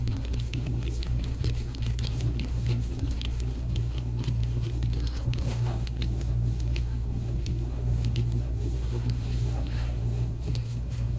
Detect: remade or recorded remade